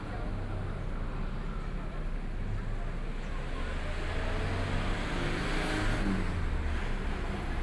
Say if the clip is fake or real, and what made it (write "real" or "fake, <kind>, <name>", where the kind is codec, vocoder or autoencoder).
real